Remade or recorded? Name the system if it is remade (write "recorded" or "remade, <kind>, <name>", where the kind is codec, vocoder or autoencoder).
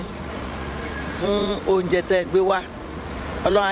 remade, vocoder, Vocos